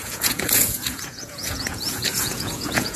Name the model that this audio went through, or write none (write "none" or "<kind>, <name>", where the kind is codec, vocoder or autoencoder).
vocoder, Vocos